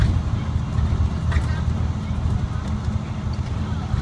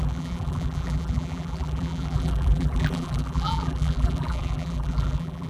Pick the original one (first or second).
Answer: first